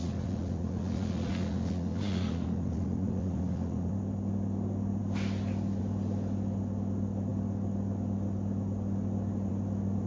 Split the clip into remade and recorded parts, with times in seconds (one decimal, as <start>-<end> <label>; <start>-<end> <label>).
0.0-3.9 remade; 3.9-10.1 recorded